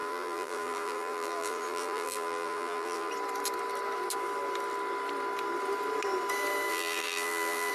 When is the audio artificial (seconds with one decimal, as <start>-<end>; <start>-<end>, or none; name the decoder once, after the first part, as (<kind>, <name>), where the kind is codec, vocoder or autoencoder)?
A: 0.0-3.1 (vocoder, BigVGAN v2); 6.7-7.7